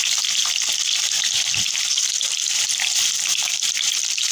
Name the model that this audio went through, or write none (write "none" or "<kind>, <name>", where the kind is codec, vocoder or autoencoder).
none